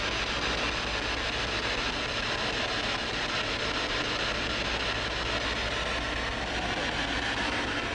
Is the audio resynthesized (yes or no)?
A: no